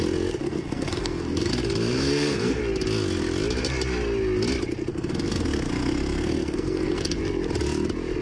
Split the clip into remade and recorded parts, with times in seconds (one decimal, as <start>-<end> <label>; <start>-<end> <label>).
0.0-0.4 recorded; 0.4-2.6 remade; 2.6-4.9 recorded; 4.9-7.2 remade; 7.2-8.2 recorded